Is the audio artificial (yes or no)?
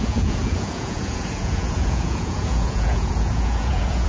yes